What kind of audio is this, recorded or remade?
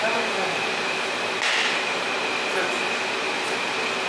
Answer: recorded